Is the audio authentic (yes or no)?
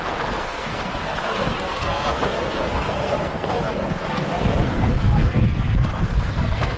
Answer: no